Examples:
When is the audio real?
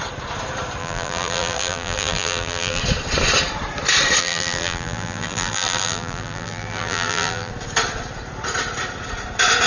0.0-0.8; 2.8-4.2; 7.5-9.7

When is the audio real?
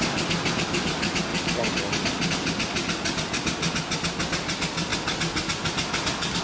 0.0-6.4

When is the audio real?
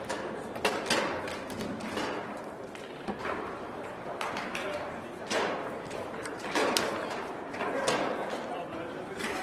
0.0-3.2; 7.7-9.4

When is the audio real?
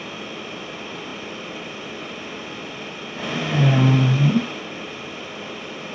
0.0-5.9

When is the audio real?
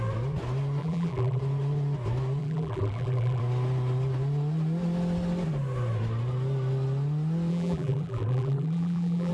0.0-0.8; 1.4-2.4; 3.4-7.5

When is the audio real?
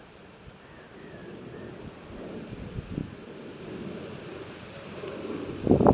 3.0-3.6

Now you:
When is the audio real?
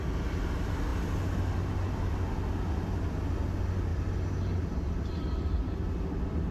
0.0-3.9; 5.8-6.5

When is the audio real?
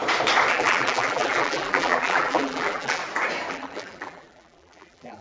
0.0-0.5; 3.0-3.5